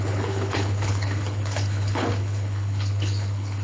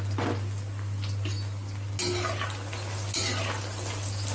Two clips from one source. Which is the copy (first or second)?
first